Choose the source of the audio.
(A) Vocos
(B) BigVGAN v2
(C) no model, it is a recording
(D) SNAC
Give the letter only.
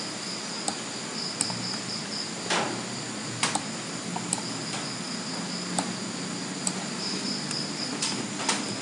C